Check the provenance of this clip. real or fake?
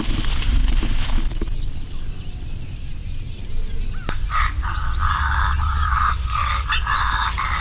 real